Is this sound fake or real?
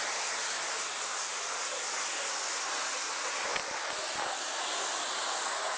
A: real